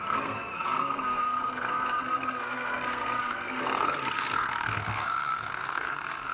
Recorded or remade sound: remade